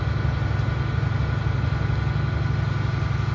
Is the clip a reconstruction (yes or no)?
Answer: no